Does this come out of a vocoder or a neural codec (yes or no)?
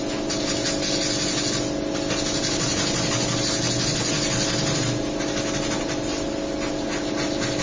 no